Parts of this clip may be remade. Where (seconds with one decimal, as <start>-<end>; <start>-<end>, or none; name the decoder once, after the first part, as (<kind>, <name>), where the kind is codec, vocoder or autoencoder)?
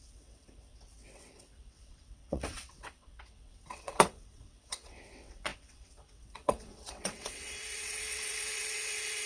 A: 0.0-9.3 (vocoder, WaveNeXt)